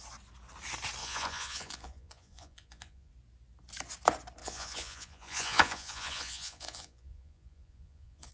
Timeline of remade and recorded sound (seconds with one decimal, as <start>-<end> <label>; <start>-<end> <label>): 0.0-1.0 recorded; 1.0-3.1 remade; 3.1-4.4 recorded; 4.4-8.3 remade